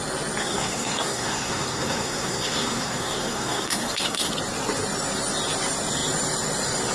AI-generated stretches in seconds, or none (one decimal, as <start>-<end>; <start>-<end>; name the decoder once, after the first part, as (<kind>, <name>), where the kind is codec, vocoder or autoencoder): 0.4-4.3 (codec, SNAC)